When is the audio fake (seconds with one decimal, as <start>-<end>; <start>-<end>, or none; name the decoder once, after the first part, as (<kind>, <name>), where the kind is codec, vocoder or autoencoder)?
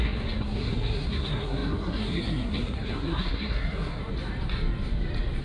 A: 0.0-4.0 (codec, SNAC)